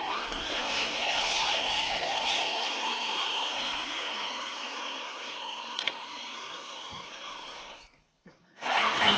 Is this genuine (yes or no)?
no